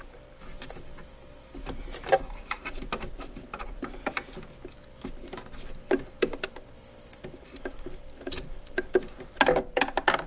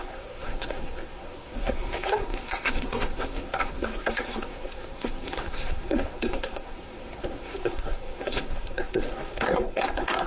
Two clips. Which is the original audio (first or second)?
first